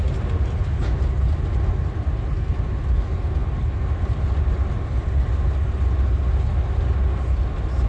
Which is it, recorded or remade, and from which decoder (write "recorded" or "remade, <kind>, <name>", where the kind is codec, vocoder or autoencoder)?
recorded